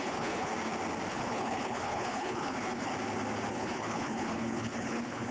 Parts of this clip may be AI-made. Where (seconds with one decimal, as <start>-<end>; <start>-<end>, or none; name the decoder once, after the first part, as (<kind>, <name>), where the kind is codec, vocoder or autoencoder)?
0.0-0.5 (codec, HILCodec); 1.1-2.9; 3.5-5.3